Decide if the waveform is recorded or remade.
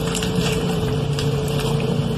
remade